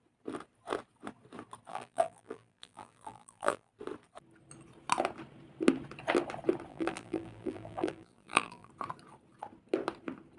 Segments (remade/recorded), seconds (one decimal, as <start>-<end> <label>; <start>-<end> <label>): 0.0-1.7 recorded; 1.7-3.7 remade; 3.7-6.7 recorded; 6.7-8.7 remade; 8.7-10.4 recorded